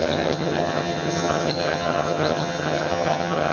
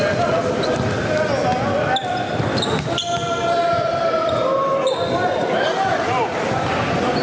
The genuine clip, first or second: second